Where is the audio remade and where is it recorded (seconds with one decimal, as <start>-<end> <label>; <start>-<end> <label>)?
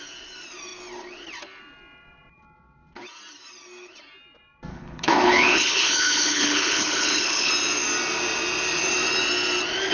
0.0-4.7 recorded; 4.7-7.5 remade; 7.5-9.9 recorded